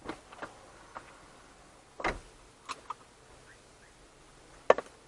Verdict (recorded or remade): recorded